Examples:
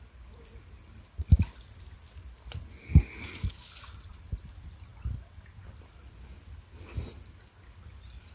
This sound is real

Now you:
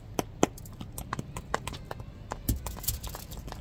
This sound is real